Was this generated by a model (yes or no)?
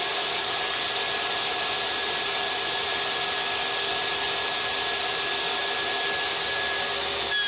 no